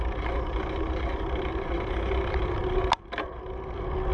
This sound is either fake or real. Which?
real